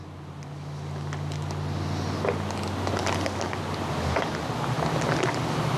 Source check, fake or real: real